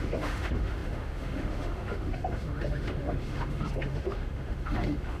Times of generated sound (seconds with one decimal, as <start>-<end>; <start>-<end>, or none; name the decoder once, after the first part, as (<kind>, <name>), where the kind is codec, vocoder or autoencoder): 0.0-5.2 (autoencoder, DAC-VAE)